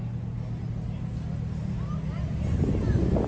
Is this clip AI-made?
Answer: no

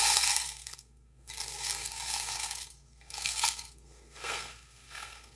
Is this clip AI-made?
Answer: yes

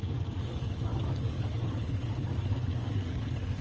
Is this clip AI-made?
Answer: yes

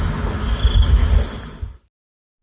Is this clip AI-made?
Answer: no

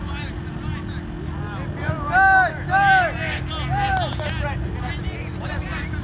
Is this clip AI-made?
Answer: no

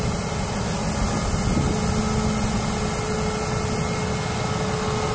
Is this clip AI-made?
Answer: no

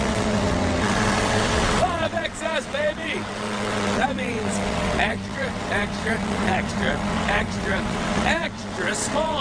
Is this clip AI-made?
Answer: yes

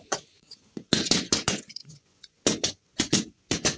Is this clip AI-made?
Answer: yes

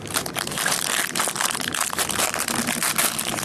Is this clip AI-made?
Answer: yes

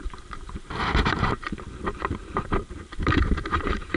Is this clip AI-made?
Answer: yes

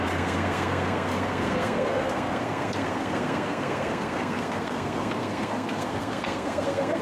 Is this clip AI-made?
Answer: yes